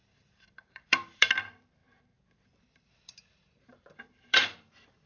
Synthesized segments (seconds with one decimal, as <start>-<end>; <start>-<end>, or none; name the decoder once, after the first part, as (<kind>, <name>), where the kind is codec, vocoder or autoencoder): 0.0-1.3 (vocoder, BigVGAN v2); 1.8-5.1